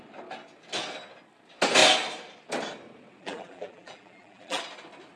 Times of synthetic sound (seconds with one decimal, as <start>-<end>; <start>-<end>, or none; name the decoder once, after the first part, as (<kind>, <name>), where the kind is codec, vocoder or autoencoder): 3.2-4.6 (vocoder, BigVGAN v2)